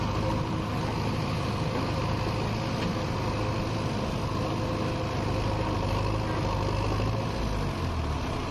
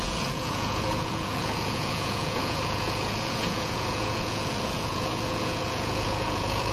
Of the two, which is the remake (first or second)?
second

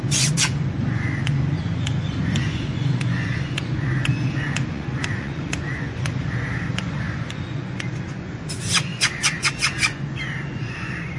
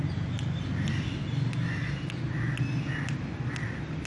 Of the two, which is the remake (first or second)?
first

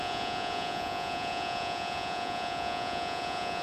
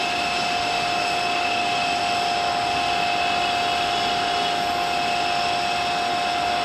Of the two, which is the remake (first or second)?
first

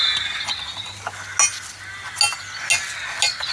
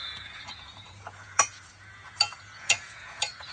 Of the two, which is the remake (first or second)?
second